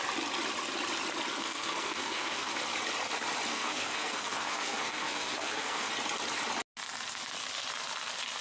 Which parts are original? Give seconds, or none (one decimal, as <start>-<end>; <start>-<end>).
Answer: 0.0-1.4; 2.5-3.5; 5.9-8.4